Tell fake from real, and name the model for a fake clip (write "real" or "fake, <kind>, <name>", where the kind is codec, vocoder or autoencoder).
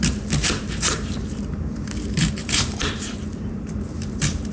fake, vocoder, BigVGAN v2